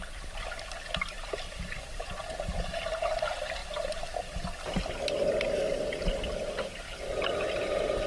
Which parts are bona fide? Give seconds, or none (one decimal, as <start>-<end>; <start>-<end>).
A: 0.0-8.1